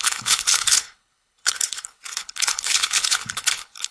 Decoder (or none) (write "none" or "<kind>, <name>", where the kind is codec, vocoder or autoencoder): codec, HILCodec